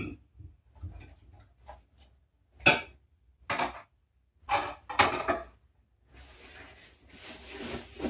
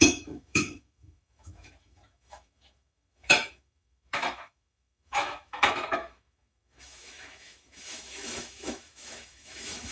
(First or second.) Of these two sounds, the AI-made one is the second